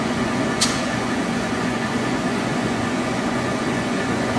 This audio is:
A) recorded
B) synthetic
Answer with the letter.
B